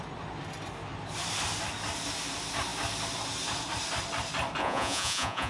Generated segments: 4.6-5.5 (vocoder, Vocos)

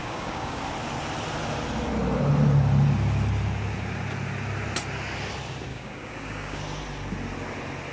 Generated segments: 0.0-0.6 (codec, DAC); 5.7-6.6

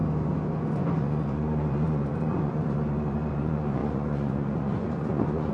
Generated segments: 0.8-5.5 (vocoder, Vocos)

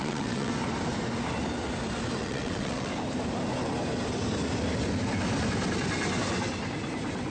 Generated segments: 0.0-0.5 (vocoder, WaveNeXt); 2.2-2.9

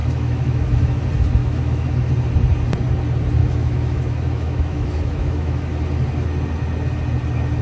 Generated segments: 0.0-1.0 (autoencoder, DAC-VAE); 1.4-2.1; 3.4-5.8

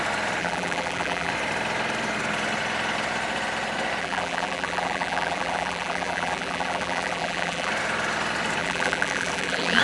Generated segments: 0.4-1.3 (vocoder, BigVGAN v2); 4.0-7.7; 8.6-9.8

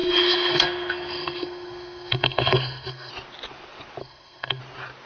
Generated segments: 0.0-3.1 (codec, SNAC); 4.0-4.6